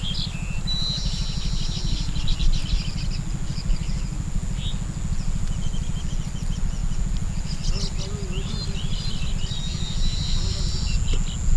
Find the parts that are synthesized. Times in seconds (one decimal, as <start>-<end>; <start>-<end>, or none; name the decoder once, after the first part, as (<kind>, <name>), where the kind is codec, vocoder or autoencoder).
none